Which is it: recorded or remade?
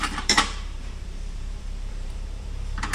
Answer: remade